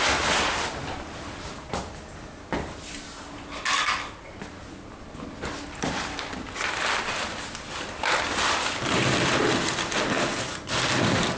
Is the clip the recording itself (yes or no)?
yes